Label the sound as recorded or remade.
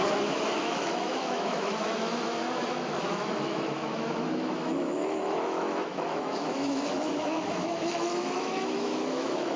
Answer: remade